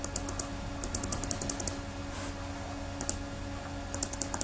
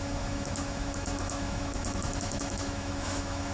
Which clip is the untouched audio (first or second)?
first